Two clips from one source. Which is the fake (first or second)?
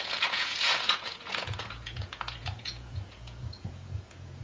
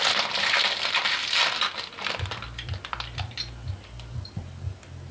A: first